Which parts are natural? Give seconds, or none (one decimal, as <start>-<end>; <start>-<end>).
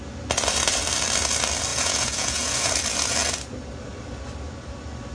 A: 0.0-1.7; 2.7-5.1